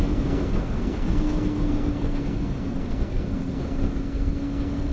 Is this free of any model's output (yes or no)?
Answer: no